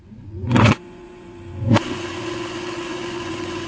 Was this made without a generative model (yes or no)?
no